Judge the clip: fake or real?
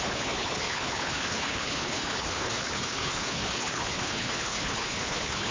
fake